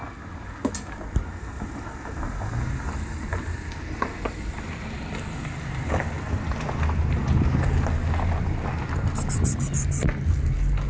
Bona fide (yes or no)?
yes